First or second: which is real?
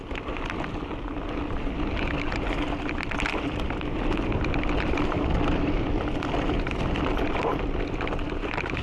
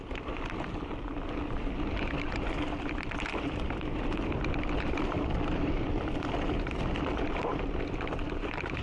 first